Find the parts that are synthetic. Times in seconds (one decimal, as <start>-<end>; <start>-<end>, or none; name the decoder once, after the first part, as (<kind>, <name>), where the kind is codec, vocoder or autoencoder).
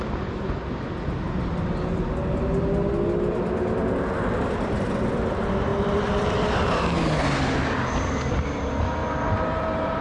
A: 9.0-10.0 (vocoder, BigVGAN v2)